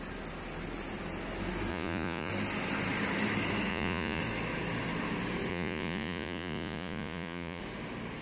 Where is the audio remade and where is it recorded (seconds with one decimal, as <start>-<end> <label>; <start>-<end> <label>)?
0.0-1.7 recorded; 1.7-2.3 remade; 2.3-3.7 recorded; 3.7-4.2 remade; 4.2-5.5 recorded; 5.5-7.6 remade; 7.6-8.2 recorded